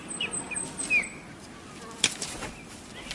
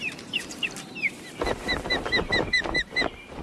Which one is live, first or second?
first